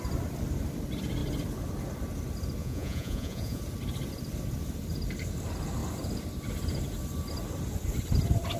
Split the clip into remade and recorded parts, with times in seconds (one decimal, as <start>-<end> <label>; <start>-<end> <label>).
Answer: 0.0-2.6 recorded; 2.6-3.6 remade; 3.6-8.6 recorded